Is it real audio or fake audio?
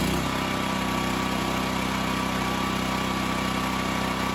real